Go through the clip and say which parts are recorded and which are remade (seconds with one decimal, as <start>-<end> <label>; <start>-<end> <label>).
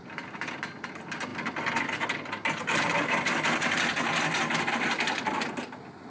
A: 0.0-6.1 recorded